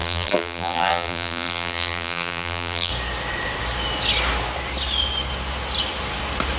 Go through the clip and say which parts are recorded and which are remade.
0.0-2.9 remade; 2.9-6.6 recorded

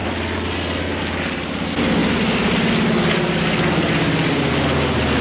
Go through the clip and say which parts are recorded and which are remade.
0.0-5.2 recorded

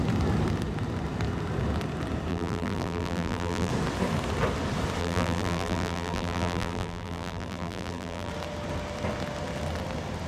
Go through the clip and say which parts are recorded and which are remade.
0.0-2.3 recorded; 2.3-3.7 remade; 3.7-5.0 recorded; 5.0-8.3 remade; 8.3-10.3 recorded

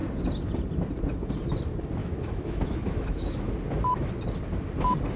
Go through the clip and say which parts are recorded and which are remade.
0.0-2.0 recorded; 2.0-3.5 remade; 3.5-5.2 recorded

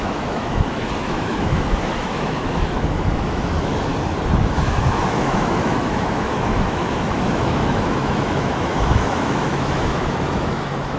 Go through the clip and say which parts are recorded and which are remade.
0.0-3.9 remade; 3.9-4.5 recorded; 4.5-11.0 remade